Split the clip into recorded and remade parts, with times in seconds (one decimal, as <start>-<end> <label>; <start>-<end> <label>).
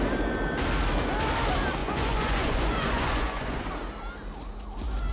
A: 0.0-1.8 recorded; 1.8-3.7 remade; 3.7-5.1 recorded